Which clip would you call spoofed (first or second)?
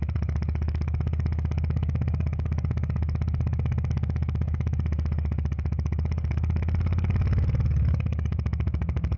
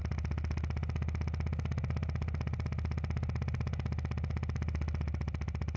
first